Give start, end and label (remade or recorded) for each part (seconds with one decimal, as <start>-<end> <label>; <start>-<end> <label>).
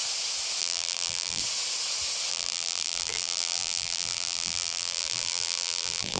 0.0-0.6 recorded; 0.6-1.4 remade; 1.4-2.3 recorded; 2.3-6.2 remade